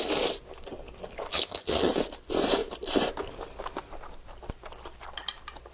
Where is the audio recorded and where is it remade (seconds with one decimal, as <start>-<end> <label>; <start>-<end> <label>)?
0.0-1.3 recorded; 1.3-1.9 remade; 1.9-5.7 recorded